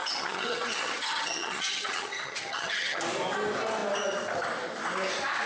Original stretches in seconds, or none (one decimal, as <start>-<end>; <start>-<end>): 3.0-5.5